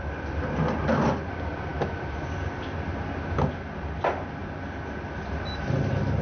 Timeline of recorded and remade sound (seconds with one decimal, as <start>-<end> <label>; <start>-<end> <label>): 0.0-6.2 recorded